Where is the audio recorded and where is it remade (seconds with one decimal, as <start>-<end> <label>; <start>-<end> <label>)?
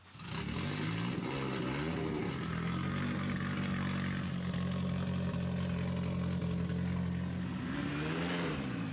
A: 0.0-8.9 recorded